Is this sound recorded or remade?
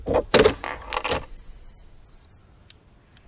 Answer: recorded